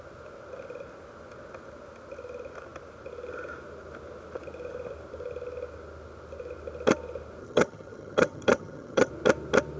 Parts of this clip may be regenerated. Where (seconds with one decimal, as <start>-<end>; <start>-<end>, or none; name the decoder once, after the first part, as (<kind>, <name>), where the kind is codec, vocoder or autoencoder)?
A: 7.4-9.1 (vocoder, HiFi-GAN)